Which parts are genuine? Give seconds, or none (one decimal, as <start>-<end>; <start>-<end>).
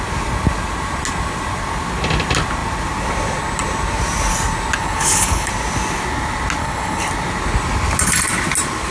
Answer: 0.0-4.8; 5.5-6.6; 7.1-8.9